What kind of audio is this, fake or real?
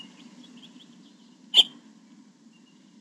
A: real